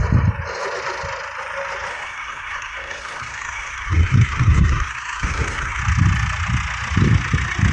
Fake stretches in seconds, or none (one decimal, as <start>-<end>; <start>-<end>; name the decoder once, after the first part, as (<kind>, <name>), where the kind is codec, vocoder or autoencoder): 1.9-5.8 (codec, SNAC)